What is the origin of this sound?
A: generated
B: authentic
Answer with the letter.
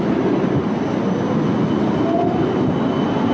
B